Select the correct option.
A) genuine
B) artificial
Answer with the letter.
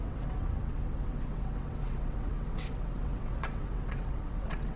B